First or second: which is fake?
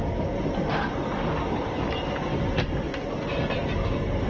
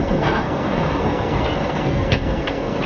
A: second